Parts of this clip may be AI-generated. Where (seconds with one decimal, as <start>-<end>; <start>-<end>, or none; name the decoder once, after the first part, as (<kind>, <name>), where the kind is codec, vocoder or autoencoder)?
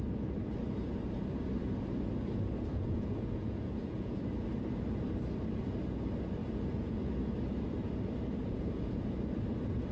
2.7-4.2 (vocoder, Vocos); 6.4-7.1; 8.4-9.1